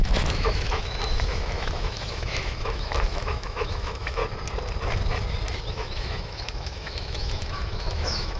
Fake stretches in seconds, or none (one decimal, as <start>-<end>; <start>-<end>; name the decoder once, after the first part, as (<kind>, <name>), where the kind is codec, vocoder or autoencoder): 0.0-4.2 (autoencoder, DAC-VAE); 5.7-8.4